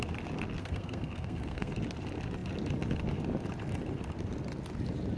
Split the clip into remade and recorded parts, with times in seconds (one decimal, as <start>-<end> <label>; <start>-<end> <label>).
0.0-0.6 recorded; 0.6-1.7 remade; 1.7-5.2 recorded